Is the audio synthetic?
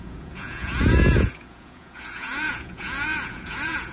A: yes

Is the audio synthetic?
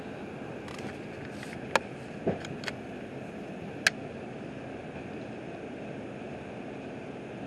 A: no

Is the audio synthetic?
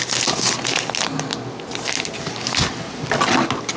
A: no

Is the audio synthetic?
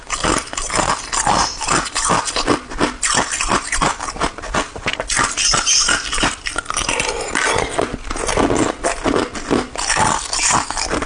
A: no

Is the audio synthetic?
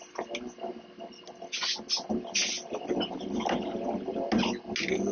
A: no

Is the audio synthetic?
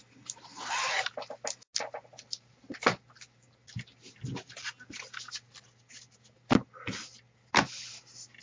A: no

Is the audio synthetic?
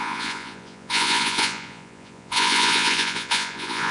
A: yes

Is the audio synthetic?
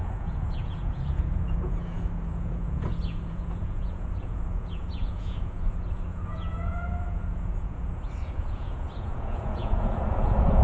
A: yes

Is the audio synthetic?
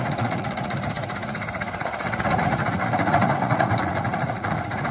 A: yes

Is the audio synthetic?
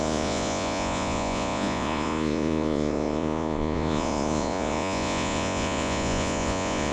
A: yes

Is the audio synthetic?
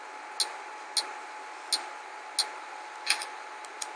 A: no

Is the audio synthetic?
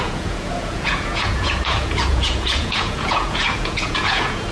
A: yes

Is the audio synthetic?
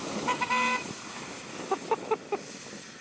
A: no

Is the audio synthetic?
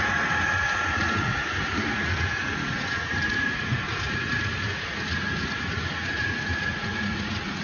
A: yes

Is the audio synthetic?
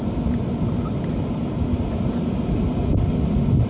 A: no